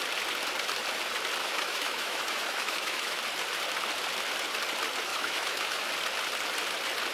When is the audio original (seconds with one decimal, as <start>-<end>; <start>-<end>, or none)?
0.0-1.4; 3.2-5.1; 5.9-7.1